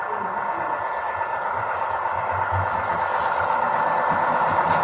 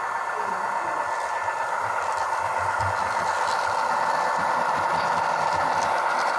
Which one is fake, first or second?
second